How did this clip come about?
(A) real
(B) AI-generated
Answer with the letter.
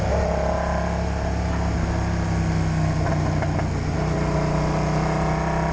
A